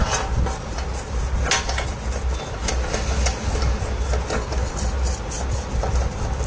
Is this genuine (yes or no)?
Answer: yes